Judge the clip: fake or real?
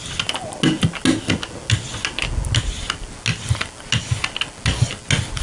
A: real